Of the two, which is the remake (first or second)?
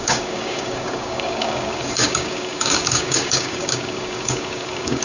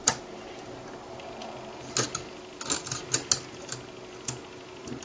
first